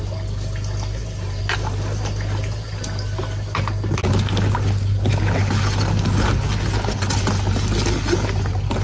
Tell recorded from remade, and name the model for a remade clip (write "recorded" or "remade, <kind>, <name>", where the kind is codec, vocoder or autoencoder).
recorded